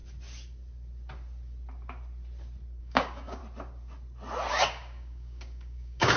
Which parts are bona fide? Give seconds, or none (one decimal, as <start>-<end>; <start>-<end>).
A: 0.0-2.8; 3.4-4.5